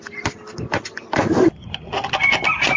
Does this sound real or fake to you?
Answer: real